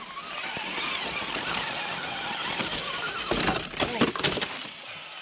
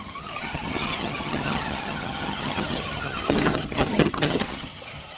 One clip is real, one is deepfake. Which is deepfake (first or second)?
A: second